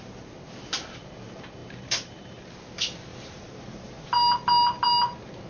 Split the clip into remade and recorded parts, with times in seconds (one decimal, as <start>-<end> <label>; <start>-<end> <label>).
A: 0.0-1.6 recorded; 1.6-2.4 remade; 2.4-3.1 recorded; 3.1-3.9 remade; 3.9-5.5 recorded